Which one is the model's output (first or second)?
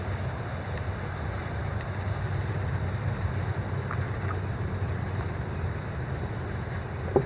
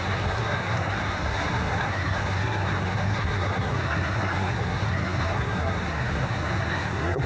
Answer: second